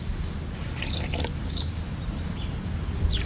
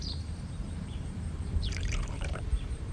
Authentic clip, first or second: first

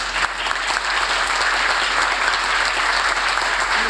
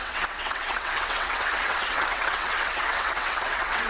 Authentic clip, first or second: first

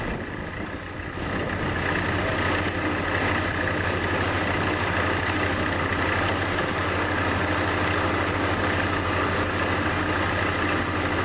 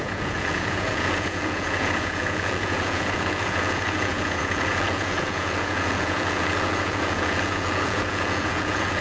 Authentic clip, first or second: first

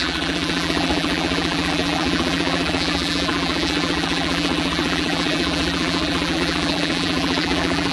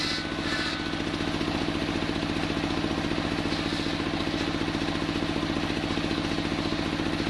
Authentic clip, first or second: second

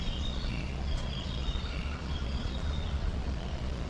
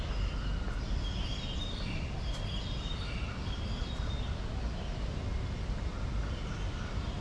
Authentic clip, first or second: second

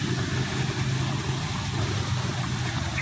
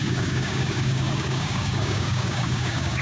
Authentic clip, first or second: first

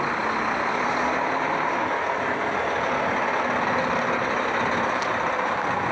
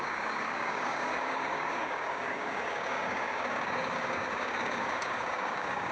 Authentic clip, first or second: first